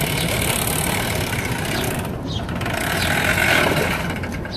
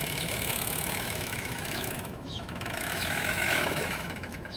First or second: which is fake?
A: second